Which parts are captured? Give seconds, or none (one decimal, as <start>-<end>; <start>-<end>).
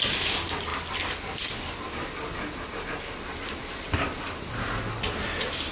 0.0-5.7